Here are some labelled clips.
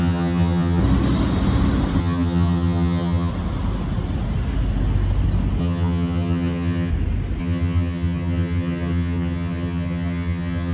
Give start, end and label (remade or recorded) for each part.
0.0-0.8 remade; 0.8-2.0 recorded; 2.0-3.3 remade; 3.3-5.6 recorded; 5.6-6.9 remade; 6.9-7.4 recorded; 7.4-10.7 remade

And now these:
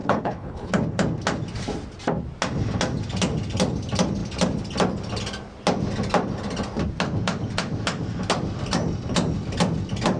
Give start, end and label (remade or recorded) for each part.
0.0-0.7 remade; 0.7-10.2 recorded

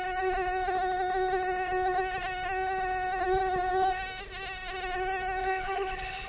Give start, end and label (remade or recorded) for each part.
0.0-5.4 recorded; 5.4-6.3 remade

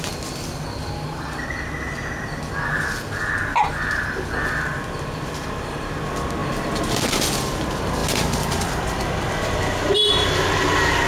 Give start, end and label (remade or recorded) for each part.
0.0-6.4 recorded; 6.4-7.0 remade; 7.0-11.1 recorded

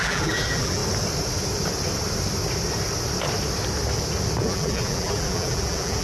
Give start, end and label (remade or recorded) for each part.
0.0-0.8 remade; 0.8-4.4 recorded; 4.4-6.0 remade

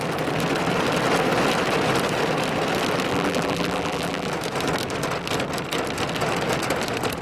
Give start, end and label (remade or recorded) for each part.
0.0-3.1 recorded; 3.1-4.3 remade; 4.3-7.2 recorded